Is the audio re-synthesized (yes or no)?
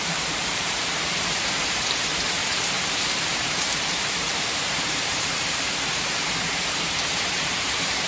yes